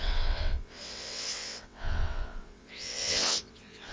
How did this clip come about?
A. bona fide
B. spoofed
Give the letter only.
B